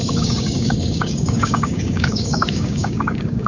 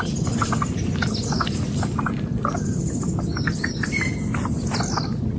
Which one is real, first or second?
second